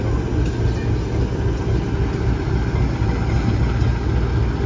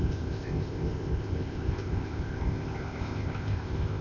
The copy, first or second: second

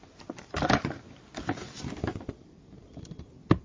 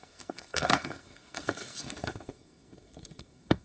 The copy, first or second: second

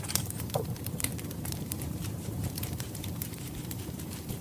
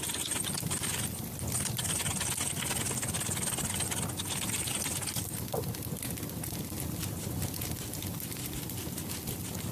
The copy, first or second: first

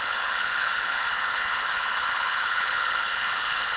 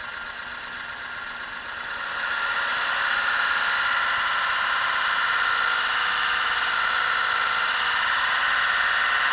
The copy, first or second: first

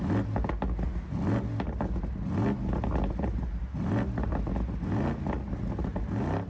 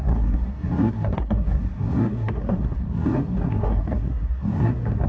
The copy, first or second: second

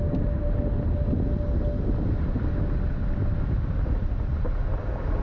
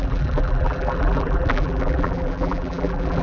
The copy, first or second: second